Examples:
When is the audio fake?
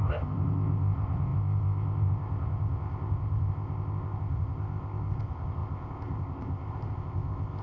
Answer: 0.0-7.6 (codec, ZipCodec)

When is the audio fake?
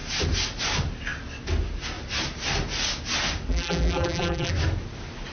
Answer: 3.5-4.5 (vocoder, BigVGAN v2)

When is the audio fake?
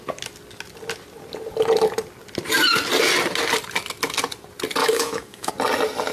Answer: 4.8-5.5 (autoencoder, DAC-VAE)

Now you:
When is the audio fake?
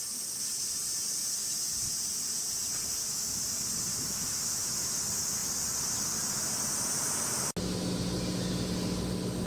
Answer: 3.0-3.5 (autoencoder, DAC-VAE); 3.9-5.0